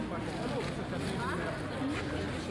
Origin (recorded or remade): recorded